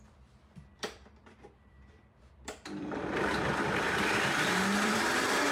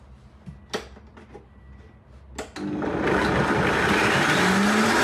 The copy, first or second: first